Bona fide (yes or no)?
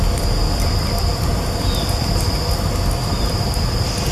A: yes